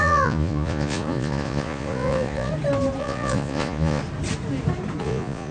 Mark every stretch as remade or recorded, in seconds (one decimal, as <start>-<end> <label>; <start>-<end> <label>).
0.0-2.5 remade; 2.5-3.0 recorded; 3.0-4.0 remade; 4.0-5.0 recorded; 5.0-5.5 remade